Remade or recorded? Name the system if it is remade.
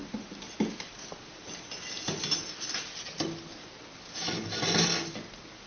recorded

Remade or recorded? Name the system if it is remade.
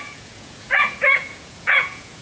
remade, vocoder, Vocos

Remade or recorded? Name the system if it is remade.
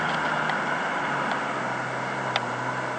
recorded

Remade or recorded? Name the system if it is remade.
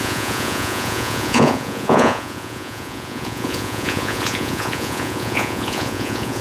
remade, vocoder, Vocos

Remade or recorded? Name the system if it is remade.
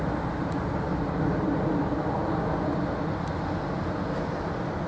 recorded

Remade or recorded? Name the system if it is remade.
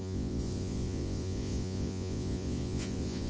remade, vocoder, Vocos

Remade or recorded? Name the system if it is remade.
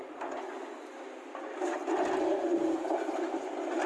recorded